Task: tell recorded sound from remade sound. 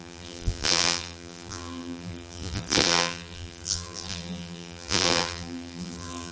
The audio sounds remade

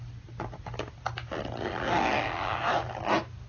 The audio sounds recorded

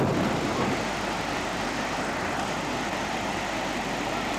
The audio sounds recorded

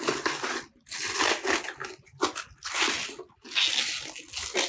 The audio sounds recorded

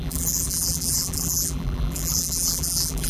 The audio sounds remade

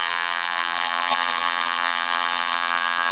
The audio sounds remade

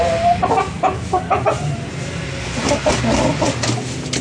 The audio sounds recorded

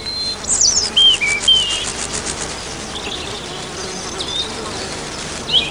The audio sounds recorded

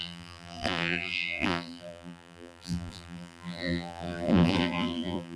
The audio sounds remade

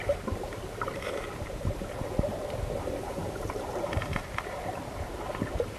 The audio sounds remade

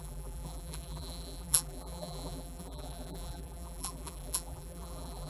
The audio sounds remade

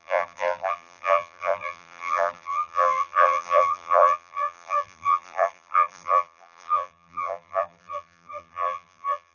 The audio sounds remade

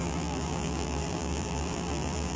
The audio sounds remade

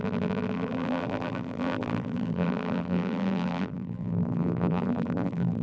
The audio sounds remade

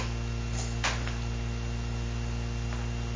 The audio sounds recorded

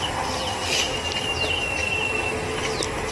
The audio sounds recorded